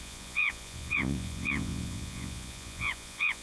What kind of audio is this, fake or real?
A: fake